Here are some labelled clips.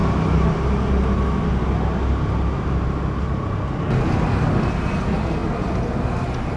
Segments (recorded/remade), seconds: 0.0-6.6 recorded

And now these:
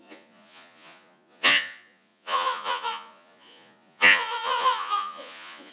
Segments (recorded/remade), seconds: 0.0-5.7 remade

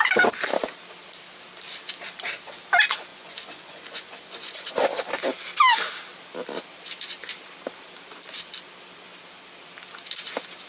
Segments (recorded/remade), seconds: 0.0-3.1 recorded; 3.1-4.7 remade; 4.7-10.7 recorded

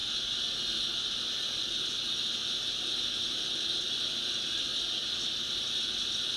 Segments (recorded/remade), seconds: 0.0-2.7 recorded; 2.7-4.7 remade; 4.7-5.2 recorded; 5.2-6.4 remade